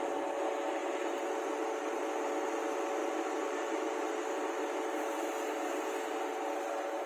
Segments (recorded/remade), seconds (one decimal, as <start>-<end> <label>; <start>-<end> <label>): 0.0-3.0 recorded; 3.0-4.2 remade; 4.2-7.1 recorded